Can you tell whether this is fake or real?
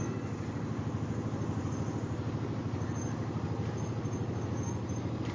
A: real